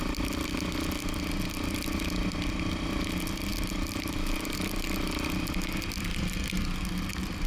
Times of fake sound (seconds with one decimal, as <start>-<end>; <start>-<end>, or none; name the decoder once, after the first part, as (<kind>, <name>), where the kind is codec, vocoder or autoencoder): none